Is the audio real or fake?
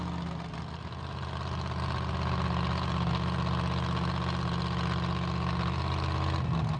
real